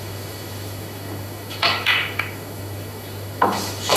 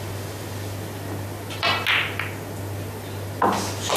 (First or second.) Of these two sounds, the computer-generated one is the first